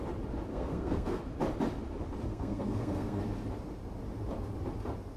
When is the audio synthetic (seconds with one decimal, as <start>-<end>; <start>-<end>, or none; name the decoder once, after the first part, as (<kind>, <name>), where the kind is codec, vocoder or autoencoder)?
0.5-1.2 (codec, SNAC); 2.3-3.2